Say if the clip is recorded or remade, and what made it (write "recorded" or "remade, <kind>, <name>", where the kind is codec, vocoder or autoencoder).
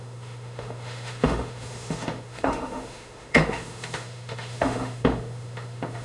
remade, autoencoder, DAC-VAE